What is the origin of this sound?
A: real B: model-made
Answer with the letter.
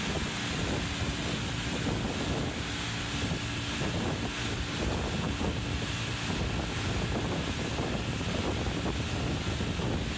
A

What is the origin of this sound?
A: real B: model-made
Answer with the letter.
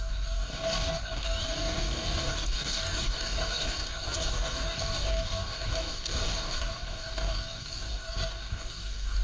B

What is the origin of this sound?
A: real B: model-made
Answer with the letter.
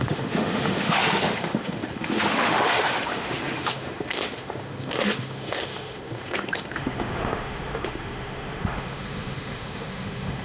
B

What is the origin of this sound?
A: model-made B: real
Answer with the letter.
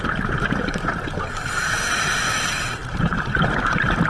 A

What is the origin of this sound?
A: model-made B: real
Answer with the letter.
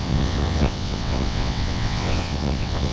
A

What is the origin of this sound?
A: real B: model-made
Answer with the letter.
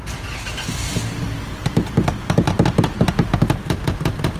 A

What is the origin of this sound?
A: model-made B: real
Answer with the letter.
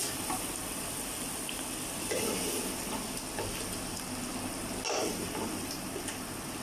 B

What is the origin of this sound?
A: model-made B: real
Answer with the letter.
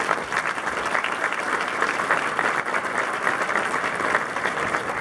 B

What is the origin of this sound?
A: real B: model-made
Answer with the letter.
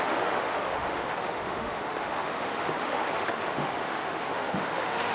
B